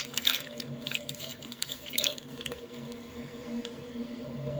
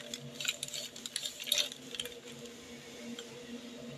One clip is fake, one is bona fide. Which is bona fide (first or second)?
second